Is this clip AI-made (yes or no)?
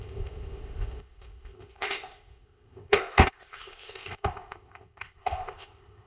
yes